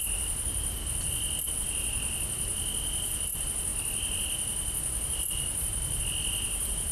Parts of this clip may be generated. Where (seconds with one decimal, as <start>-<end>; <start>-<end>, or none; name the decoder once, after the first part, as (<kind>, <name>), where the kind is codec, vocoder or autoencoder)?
none